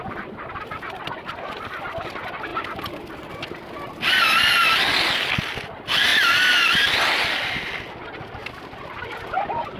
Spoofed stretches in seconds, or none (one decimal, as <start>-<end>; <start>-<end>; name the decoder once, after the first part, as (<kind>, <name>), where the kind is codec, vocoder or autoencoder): none

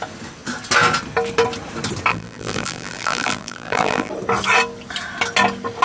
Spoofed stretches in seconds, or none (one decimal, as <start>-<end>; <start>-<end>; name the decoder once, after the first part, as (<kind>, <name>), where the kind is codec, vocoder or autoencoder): 2.1-4.1 (vocoder, BigVGAN v2)

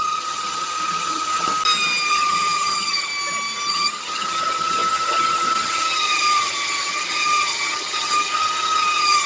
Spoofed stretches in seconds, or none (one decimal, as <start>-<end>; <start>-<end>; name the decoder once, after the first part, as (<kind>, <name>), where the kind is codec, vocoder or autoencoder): 0.0-1.5 (vocoder, HiFi-GAN); 2.1-3.1; 3.7-9.3

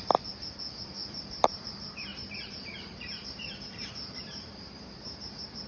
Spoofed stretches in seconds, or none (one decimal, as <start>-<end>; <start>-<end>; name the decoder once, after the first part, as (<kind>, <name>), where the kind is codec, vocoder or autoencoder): 1.0-1.7 (vocoder, BigVGAN v2); 2.1-5.7

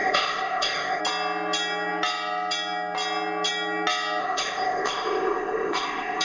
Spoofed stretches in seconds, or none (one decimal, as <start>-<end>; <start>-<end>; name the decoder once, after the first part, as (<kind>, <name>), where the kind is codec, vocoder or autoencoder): 0.0-1.0 (codec, ZipCodec); 4.2-6.2

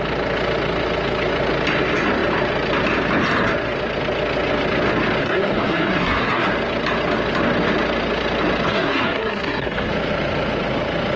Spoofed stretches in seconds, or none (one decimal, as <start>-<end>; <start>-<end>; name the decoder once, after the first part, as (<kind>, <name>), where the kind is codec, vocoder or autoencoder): 5.2-6.5 (codec, SNAC); 8.7-9.9

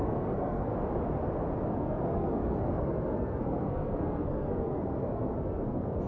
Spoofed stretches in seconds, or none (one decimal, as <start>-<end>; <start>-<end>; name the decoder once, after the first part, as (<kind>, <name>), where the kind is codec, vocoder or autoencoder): 0.0-0.7 (codec, SNAC); 1.7-6.1